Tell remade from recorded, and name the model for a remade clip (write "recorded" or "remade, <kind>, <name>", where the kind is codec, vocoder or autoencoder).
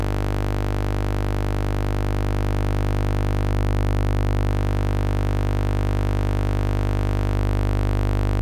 remade, vocoder, BigVGAN v2